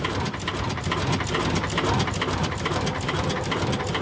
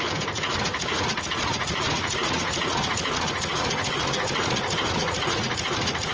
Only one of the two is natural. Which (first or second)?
first